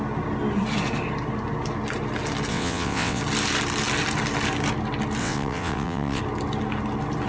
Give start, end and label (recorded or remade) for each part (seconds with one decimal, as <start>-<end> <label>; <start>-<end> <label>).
0.0-2.5 recorded; 2.5-3.2 remade; 3.2-5.2 recorded; 5.2-6.2 remade; 6.2-7.3 recorded